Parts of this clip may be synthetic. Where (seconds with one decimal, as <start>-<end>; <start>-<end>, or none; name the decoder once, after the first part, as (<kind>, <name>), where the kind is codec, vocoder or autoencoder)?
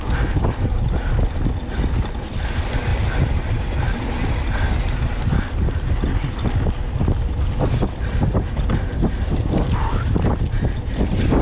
none